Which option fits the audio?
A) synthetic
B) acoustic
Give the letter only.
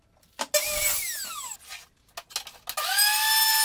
B